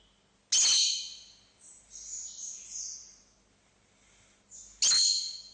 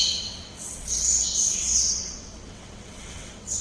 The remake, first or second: second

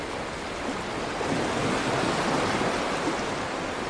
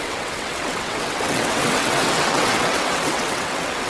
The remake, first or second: second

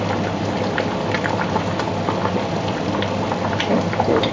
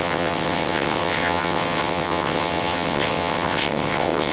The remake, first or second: second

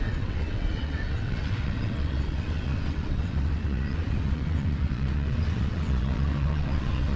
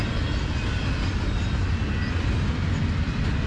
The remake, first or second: first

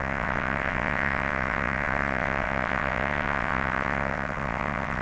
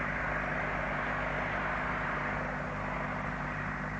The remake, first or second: first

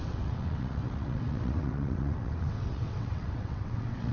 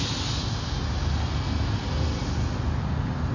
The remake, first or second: first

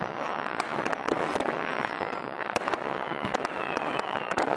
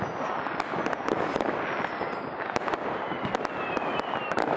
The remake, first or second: first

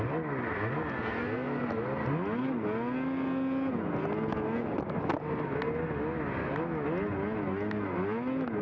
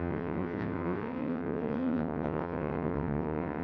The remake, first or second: second